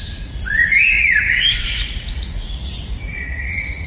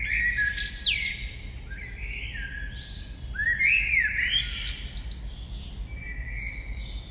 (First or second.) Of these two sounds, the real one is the second